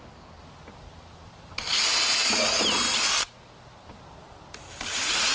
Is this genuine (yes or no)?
yes